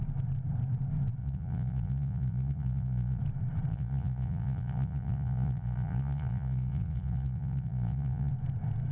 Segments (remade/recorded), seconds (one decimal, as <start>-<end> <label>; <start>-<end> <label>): 0.0-1.2 recorded; 1.2-3.2 remade; 3.2-3.7 recorded; 3.7-8.3 remade; 8.3-8.9 recorded